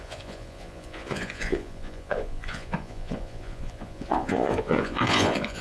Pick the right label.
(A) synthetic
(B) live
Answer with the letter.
A